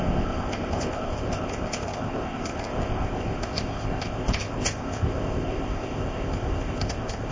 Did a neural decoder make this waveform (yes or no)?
yes